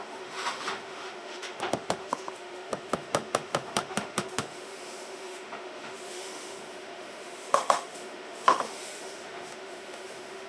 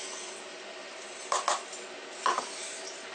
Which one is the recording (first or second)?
second